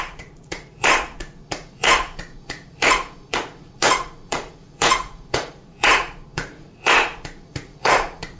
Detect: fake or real fake